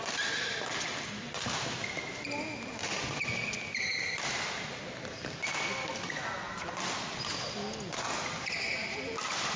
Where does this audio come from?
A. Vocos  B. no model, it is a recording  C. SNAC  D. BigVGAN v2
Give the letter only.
B